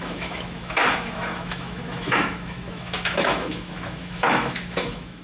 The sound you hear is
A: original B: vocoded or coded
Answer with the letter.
B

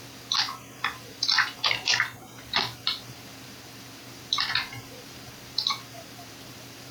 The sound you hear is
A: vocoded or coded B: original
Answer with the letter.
A